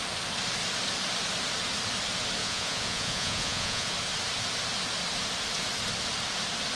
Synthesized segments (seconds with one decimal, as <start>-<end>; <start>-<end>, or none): 2.4-3.9